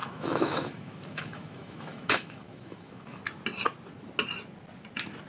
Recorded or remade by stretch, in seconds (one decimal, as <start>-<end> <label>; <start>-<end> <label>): 0.0-3.2 remade; 3.2-5.3 recorded